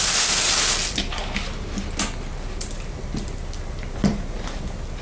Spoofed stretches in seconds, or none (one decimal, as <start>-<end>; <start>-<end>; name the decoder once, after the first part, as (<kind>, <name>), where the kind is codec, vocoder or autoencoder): none